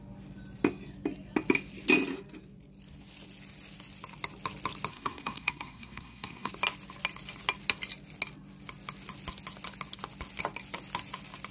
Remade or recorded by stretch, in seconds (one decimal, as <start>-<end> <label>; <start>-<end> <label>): 0.0-4.9 recorded; 4.9-6.5 remade; 6.5-11.5 recorded